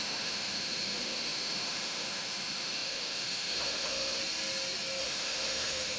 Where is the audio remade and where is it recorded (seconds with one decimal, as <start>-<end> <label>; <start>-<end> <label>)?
0.0-4.2 remade; 4.2-5.0 recorded; 5.0-6.0 remade